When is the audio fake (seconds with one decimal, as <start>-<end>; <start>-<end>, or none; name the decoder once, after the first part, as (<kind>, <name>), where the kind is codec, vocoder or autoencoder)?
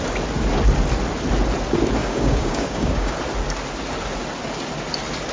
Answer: 2.0-3.1 (codec, DAC)